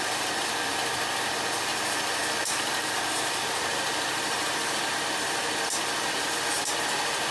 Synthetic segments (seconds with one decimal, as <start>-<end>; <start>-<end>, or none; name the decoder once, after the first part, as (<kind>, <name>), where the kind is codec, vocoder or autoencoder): 1.7-6.1 (vocoder, BigVGAN v2)